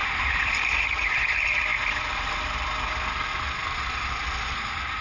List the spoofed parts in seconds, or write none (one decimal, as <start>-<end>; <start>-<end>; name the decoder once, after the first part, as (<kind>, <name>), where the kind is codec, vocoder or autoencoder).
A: 0.0-1.1 (vocoder, BigVGAN v2)